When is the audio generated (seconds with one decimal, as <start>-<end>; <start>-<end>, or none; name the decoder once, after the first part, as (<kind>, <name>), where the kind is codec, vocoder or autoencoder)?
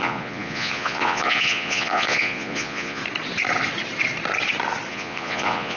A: 0.0-3.0 (vocoder, Vocos); 4.9-5.8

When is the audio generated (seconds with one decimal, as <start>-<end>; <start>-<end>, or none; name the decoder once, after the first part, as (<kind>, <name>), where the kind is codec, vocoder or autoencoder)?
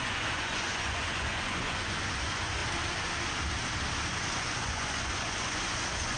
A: 0.0-2.6 (vocoder, Vocos); 4.1-6.2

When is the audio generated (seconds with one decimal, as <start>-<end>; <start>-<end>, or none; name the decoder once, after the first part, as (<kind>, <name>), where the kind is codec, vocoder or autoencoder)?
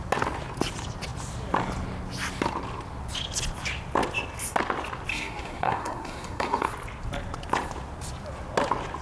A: 5.1-6.7 (codec, SNAC)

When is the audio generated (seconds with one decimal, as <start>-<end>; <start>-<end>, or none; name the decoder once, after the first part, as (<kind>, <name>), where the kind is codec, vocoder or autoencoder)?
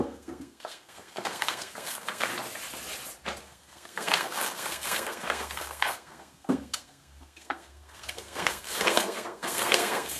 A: 0.0-2.3 (codec, SNAC); 3.4-10.2